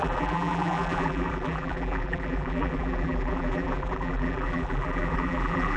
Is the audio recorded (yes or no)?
no